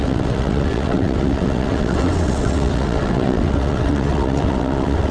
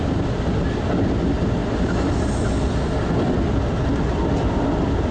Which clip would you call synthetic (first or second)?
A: first